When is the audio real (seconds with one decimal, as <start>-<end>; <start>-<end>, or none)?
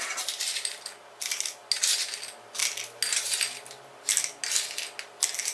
0.0-5.5